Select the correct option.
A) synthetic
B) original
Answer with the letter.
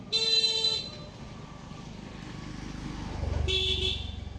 B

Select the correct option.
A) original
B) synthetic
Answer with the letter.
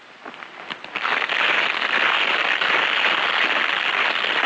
A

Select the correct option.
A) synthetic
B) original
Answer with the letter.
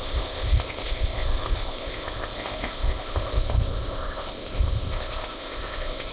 A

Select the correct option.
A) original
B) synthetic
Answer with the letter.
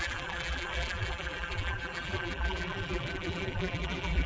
B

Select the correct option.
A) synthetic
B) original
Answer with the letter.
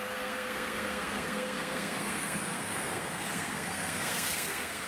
A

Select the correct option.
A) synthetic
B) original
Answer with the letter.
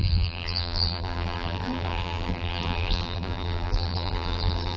A